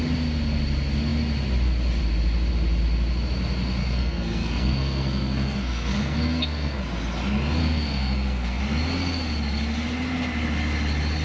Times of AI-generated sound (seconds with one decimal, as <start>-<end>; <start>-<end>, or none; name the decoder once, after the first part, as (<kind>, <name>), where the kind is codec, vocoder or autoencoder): 3.8-6.8 (codec, SNAC); 7.6-8.6